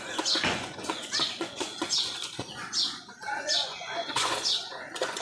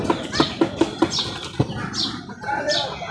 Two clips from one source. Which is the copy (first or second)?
first